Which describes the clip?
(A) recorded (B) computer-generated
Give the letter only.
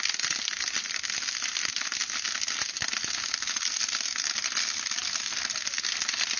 A